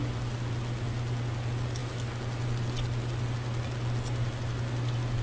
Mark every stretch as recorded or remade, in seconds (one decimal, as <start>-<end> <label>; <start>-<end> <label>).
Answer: 0.0-5.2 recorded